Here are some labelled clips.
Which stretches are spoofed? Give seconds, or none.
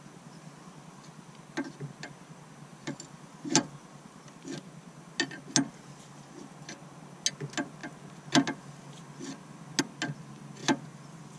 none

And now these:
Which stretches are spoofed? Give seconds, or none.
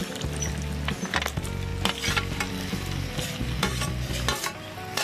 none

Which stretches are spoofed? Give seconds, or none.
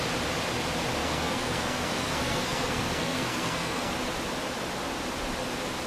1.0-3.9 (codec, SNAC)